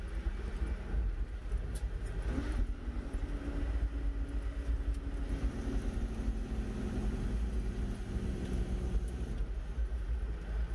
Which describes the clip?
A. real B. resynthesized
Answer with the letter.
A